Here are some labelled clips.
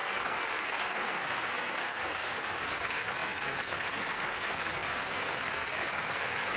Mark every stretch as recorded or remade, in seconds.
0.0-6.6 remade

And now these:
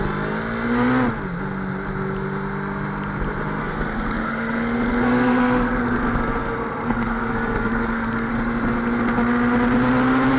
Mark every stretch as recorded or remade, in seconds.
0.0-3.6 recorded; 3.6-8.3 remade; 8.3-10.4 recorded

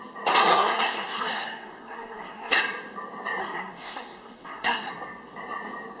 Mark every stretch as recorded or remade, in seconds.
0.0-0.4 recorded; 0.4-2.6 remade; 2.6-3.4 recorded; 3.4-4.9 remade; 4.9-6.0 recorded

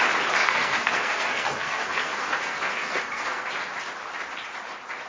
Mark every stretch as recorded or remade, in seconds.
0.0-0.4 recorded; 0.4-3.5 remade; 3.5-5.1 recorded

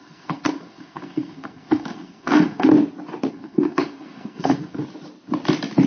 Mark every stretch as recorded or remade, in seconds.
0.0-2.7 remade; 2.7-3.3 recorded; 3.3-4.8 remade; 4.8-5.9 recorded

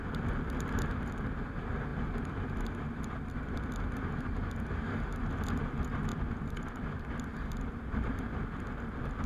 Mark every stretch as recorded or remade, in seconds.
0.0-9.3 recorded

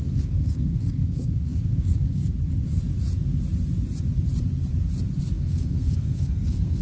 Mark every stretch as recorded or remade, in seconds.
0.0-2.2 remade; 2.2-5.3 recorded; 5.3-6.8 remade

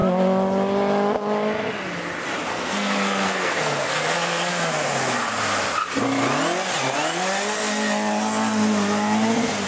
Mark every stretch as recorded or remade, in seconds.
0.0-2.5 recorded; 2.5-4.5 remade; 4.5-9.7 recorded